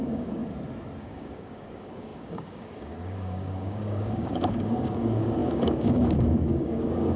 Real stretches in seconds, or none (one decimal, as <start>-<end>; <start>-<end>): 0.4-1.0